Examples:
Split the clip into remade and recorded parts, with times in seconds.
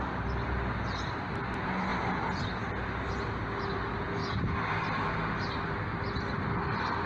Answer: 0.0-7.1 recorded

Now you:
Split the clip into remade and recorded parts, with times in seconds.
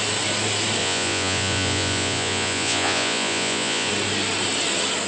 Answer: 0.0-0.8 recorded; 0.8-3.9 remade; 3.9-5.1 recorded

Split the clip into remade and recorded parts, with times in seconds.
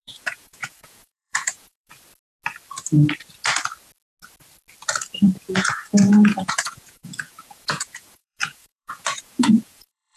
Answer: 0.0-1.9 remade; 1.9-5.4 recorded; 5.4-10.2 remade